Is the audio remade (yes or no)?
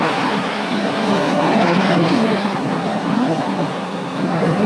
yes